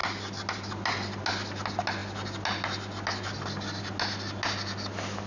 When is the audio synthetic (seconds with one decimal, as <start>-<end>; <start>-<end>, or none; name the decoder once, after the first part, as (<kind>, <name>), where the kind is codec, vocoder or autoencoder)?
none